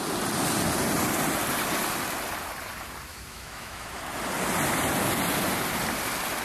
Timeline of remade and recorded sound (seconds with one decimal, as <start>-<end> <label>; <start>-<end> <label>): 0.0-3.1 recorded; 3.1-4.0 remade; 4.0-6.4 recorded